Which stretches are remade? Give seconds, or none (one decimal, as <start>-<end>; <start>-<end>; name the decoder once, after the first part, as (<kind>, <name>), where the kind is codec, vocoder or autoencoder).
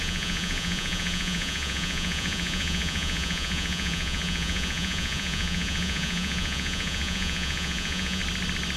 0.0-8.2 (vocoder, Vocos)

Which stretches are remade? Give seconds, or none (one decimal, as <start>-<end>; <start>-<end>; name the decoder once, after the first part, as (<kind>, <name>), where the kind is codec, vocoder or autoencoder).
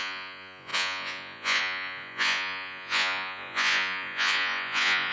0.0-5.1 (vocoder, Vocos)